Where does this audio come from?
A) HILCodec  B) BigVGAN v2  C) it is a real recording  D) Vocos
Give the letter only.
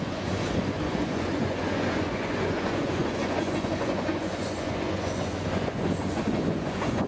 D